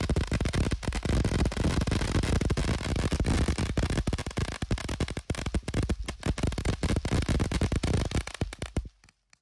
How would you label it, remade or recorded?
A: recorded